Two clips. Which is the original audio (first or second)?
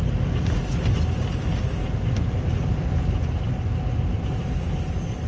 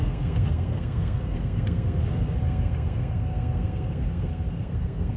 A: first